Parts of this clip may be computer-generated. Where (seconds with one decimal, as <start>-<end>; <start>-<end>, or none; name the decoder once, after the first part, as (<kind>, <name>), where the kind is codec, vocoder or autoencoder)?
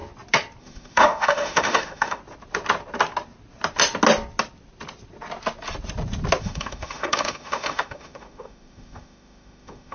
0.6-2.2 (autoencoder, DAC-VAE); 6.4-9.9